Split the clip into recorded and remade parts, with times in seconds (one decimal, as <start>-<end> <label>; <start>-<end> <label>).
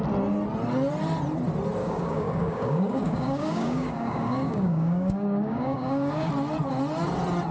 0.0-1.8 recorded; 1.8-6.3 remade; 6.3-7.5 recorded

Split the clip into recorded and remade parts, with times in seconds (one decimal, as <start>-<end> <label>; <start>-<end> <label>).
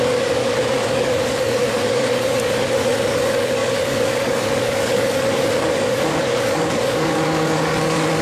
0.0-8.2 remade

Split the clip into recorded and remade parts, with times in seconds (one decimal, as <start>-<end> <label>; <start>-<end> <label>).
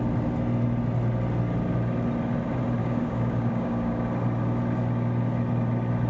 0.0-2.8 recorded; 2.8-4.0 remade; 4.0-6.1 recorded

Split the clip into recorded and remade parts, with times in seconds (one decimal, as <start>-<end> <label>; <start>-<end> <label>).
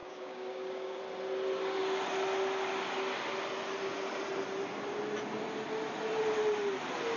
0.0-1.0 remade; 1.0-7.2 recorded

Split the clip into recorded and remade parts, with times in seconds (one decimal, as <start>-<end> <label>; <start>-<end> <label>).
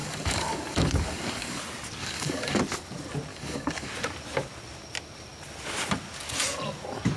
0.0-1.6 remade; 1.6-2.0 recorded; 2.0-2.6 remade; 2.6-3.3 recorded; 3.3-3.9 remade; 3.9-7.2 recorded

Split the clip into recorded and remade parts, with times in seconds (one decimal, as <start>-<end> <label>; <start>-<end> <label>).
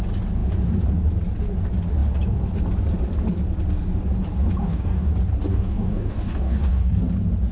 0.0-4.6 recorded; 4.6-5.1 remade; 5.1-5.5 recorded; 5.5-7.0 remade; 7.0-7.5 recorded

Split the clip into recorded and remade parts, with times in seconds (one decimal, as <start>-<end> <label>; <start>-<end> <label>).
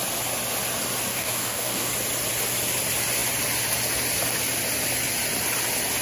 0.0-1.1 recorded; 1.1-1.9 remade; 1.9-6.0 recorded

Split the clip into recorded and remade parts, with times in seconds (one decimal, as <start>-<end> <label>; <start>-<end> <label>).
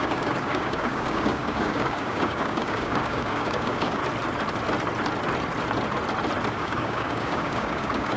0.0-4.0 remade; 4.0-6.5 recorded; 6.5-8.2 remade